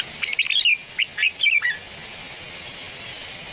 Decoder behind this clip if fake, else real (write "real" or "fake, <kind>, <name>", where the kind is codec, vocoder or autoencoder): real